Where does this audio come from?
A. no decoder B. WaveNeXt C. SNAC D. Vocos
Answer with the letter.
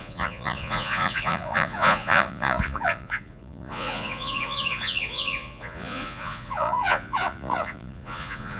D